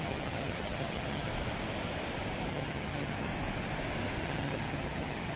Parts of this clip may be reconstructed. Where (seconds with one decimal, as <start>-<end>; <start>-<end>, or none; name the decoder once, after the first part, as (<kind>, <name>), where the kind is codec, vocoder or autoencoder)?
0.0-1.3 (vocoder, HiFi-GAN); 2.5-3.3; 4.2-5.4